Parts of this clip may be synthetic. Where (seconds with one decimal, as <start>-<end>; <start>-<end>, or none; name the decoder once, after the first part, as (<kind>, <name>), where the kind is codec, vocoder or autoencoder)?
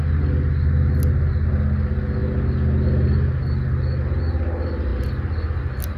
none